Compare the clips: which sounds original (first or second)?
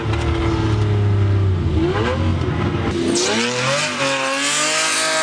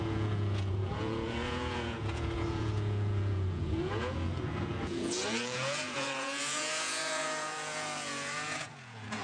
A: first